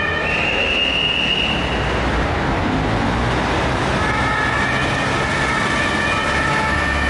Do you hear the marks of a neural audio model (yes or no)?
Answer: no